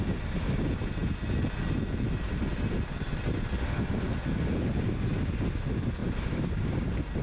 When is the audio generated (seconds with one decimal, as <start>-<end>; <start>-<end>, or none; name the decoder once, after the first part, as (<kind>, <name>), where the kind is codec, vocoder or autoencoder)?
none